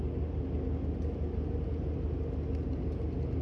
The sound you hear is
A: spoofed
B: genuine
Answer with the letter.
B